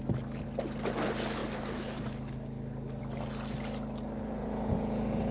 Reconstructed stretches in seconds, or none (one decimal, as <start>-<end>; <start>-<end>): 4.4-5.3